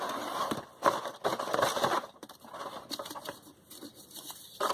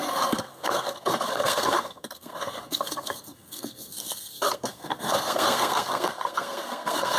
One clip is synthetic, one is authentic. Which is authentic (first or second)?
first